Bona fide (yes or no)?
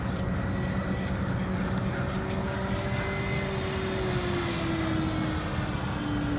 yes